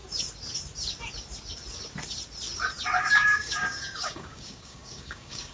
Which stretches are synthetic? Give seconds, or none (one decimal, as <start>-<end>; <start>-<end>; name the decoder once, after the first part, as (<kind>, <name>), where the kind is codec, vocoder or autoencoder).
3.0-5.5 (codec, DAC)